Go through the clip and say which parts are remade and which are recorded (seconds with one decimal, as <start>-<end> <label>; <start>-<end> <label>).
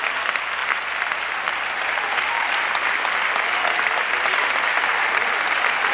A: 0.0-5.9 recorded